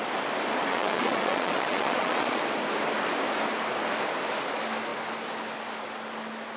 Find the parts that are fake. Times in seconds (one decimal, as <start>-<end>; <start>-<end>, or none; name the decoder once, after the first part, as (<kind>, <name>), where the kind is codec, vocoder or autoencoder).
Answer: 0.7-2.4 (vocoder, Vocos)